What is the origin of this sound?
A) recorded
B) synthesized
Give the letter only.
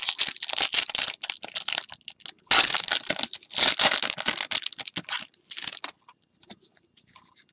A